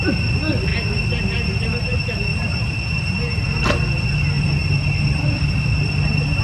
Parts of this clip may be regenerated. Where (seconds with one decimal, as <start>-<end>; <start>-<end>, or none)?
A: 2.3-3.8